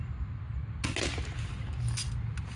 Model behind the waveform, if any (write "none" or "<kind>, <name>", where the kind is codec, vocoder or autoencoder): none